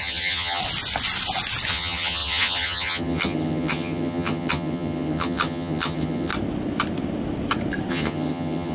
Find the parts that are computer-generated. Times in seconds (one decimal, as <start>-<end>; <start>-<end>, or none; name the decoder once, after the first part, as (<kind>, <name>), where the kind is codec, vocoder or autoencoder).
0.0-0.6 (vocoder, HiFi-GAN); 1.7-6.3; 7.9-8.7